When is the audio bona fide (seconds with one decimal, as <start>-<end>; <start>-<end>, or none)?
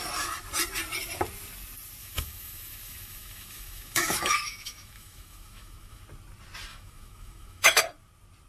0.0-2.0; 6.0-6.7; 7.8-8.5